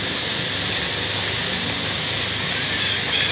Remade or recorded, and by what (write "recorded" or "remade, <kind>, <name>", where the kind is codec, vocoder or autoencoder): recorded